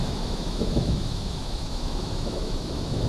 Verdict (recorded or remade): remade